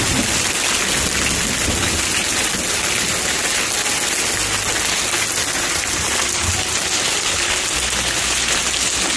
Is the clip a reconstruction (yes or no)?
no